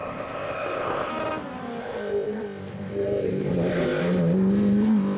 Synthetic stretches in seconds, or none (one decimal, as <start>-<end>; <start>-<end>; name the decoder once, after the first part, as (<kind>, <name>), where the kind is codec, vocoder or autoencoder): 0.0-1.1 (codec, ZipCodec); 1.8-5.2